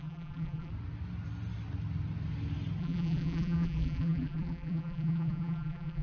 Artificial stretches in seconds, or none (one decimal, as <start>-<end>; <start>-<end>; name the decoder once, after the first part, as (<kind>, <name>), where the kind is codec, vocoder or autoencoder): 0.0-0.7 (vocoder, BigVGAN v2); 2.8-6.0